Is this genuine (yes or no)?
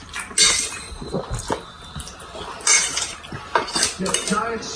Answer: yes